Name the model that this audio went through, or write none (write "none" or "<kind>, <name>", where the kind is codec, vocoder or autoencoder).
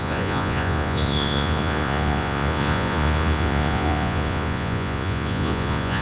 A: vocoder, Vocos